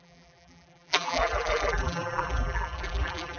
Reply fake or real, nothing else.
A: fake